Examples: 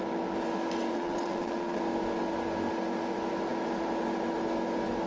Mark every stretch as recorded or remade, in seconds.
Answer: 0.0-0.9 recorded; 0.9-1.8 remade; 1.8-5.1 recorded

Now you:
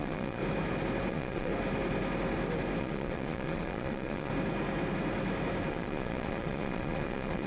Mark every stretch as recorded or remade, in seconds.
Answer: 0.0-0.4 remade; 0.4-1.1 recorded; 1.1-1.5 remade; 1.5-2.8 recorded; 2.8-4.3 remade; 4.3-5.7 recorded; 5.7-7.5 remade